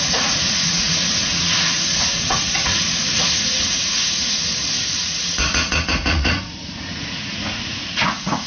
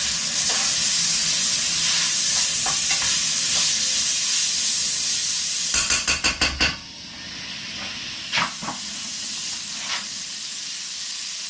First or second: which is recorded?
second